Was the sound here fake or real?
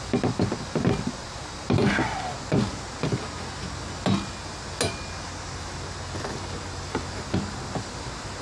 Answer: real